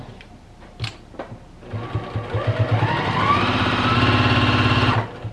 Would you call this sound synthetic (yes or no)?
no